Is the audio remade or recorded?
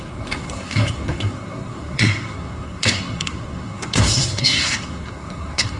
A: remade